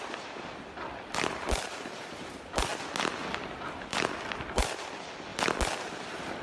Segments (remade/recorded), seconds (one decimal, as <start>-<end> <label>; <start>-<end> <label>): 0.0-2.7 remade; 2.7-3.7 recorded; 3.7-5.3 remade; 5.3-5.8 recorded; 5.8-6.4 remade